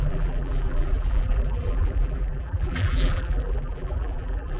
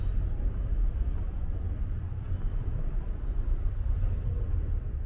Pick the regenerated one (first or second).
first